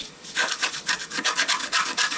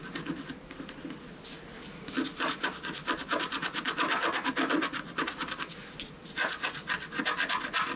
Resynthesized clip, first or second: first